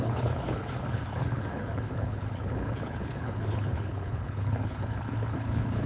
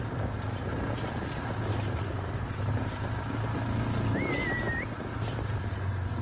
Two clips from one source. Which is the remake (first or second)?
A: first